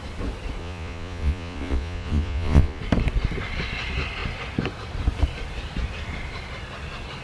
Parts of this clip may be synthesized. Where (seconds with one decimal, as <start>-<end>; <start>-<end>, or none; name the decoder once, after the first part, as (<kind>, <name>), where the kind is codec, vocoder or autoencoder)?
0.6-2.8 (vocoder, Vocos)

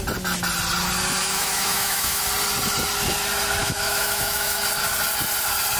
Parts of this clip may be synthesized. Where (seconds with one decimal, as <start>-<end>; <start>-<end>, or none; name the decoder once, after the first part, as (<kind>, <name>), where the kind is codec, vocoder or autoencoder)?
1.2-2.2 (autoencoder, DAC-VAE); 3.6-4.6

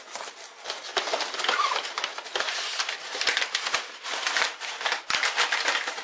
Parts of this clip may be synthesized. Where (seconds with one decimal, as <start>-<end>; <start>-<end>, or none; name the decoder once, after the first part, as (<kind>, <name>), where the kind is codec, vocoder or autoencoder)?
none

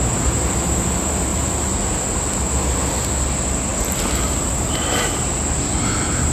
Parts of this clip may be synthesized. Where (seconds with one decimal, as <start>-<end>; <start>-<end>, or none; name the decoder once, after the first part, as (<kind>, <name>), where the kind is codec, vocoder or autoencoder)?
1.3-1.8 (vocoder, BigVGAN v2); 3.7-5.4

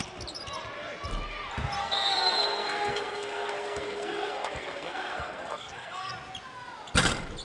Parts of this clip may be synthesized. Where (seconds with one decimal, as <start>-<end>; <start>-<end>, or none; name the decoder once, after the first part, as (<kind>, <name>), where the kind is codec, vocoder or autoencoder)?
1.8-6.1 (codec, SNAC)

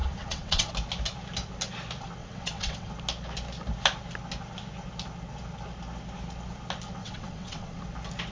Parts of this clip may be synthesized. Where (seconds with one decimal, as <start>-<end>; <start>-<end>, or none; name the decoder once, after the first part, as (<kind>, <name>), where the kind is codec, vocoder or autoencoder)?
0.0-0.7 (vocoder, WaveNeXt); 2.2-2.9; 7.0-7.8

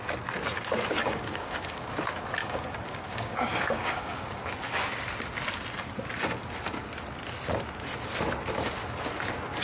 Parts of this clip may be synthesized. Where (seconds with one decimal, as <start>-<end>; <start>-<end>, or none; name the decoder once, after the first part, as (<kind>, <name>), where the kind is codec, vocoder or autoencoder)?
1.0-1.9 (codec, DAC); 2.4-4.4

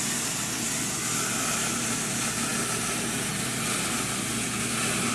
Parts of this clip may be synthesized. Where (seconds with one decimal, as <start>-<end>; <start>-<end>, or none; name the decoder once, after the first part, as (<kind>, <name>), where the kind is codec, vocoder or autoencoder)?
none